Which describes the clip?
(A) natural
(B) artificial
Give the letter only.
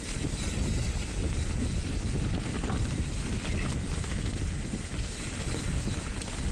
A